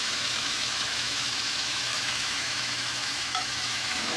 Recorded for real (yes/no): no